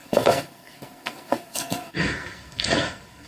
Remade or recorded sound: remade